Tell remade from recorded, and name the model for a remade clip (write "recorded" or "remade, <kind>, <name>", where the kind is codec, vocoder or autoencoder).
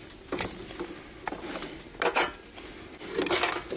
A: recorded